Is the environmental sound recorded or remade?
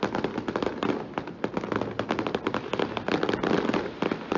recorded